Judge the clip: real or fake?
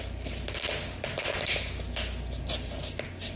real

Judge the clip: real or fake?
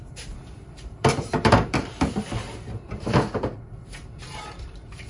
fake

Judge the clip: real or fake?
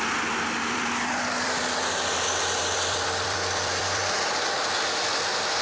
fake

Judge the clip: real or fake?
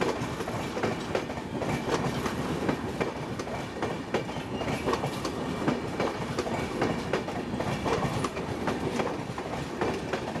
real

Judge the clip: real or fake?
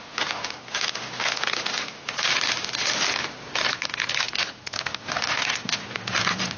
real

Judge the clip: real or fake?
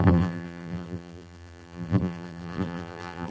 fake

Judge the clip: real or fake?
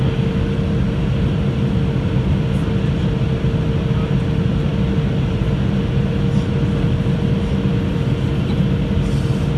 real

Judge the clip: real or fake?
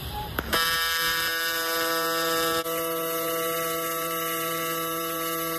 fake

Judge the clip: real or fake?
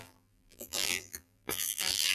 fake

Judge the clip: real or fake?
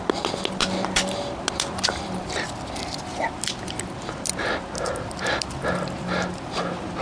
real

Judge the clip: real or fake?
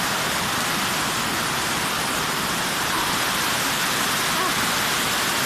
real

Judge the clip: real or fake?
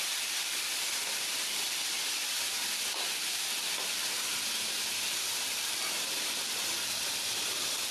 fake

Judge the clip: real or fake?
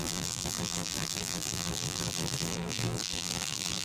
fake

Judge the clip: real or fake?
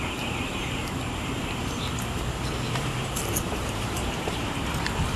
fake